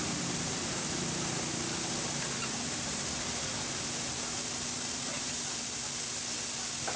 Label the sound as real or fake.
real